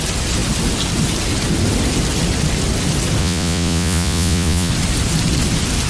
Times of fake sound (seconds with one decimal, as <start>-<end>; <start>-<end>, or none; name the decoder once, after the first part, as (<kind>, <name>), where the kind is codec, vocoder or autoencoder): 3.2-4.7 (vocoder, Vocos)